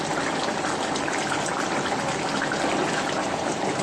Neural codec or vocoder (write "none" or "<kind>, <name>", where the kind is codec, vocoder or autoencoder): none